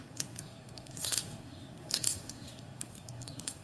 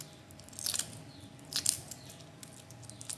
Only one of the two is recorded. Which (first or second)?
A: second